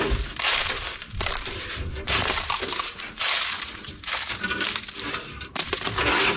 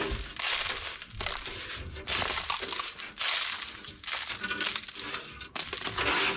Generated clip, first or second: first